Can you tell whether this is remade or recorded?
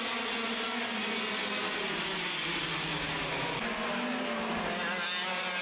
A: recorded